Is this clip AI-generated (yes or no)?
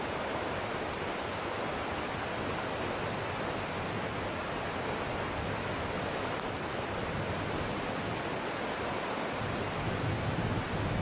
no